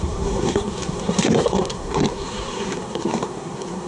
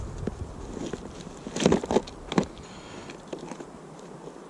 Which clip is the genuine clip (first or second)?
second